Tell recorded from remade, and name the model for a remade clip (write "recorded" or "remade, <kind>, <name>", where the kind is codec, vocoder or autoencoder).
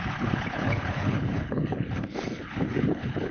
remade, codec, HILCodec